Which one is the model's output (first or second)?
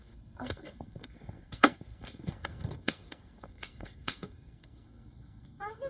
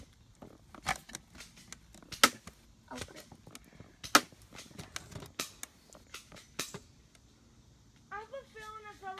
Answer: first